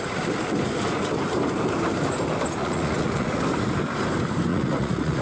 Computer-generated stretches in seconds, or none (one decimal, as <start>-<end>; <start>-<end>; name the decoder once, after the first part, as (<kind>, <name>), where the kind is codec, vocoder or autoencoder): 2.6-3.4 (vocoder, Vocos); 4.5-5.2